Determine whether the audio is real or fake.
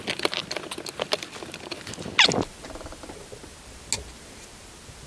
real